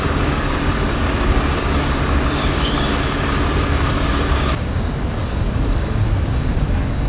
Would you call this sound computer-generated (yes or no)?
yes